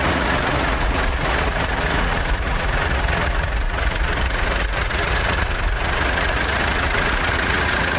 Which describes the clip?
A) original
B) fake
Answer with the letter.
B